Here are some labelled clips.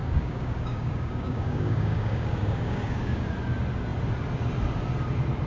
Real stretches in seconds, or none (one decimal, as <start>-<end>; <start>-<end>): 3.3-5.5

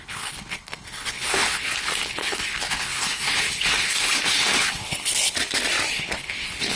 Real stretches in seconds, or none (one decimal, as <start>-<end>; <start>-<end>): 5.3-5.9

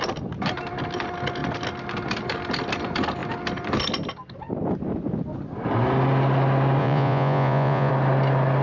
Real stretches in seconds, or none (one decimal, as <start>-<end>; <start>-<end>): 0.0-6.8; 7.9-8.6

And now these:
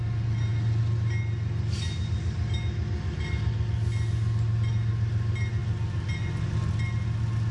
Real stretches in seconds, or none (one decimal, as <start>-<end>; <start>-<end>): 0.0-7.5